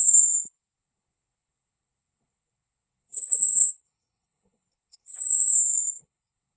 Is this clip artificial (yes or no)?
yes